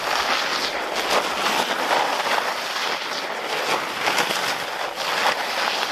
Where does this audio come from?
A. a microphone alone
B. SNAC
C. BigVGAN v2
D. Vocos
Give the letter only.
A